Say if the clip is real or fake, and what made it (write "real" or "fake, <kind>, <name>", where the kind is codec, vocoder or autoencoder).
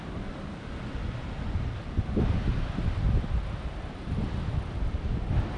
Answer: real